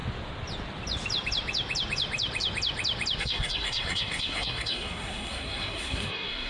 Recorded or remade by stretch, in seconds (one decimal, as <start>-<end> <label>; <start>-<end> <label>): 0.0-3.2 recorded; 3.2-6.5 remade